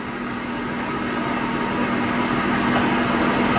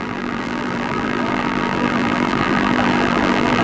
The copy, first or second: second